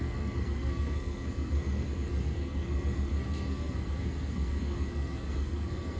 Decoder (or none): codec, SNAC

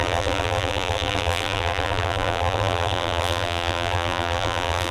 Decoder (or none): vocoder, BigVGAN v2